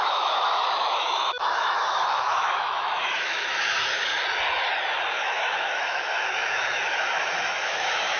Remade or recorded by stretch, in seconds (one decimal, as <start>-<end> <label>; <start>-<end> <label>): 0.0-4.1 remade; 4.1-5.1 recorded; 5.1-8.2 remade